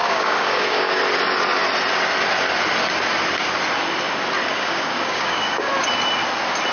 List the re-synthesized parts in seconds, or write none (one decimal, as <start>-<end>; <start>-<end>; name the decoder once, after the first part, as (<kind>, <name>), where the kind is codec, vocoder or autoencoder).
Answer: 0.0-1.0 (codec, DAC); 4.5-5.7